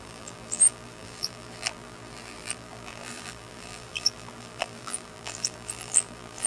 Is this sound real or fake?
fake